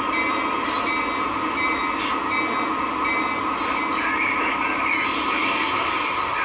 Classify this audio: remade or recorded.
recorded